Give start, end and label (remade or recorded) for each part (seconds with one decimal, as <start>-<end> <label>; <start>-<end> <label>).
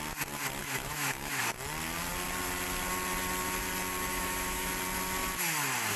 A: 0.0-0.6 recorded; 0.6-1.4 remade; 1.4-4.1 recorded; 4.1-4.7 remade; 4.7-6.0 recorded